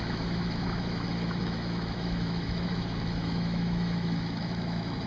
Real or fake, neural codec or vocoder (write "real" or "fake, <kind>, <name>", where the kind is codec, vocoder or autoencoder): fake, autoencoder, DAC-VAE